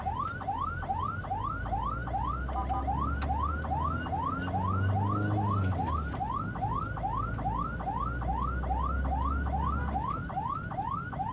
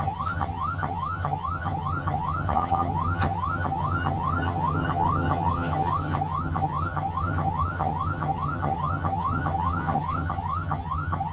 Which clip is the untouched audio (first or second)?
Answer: first